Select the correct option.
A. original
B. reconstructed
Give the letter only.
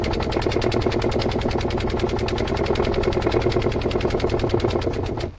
A